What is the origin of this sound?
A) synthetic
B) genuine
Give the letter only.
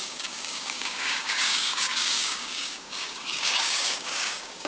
A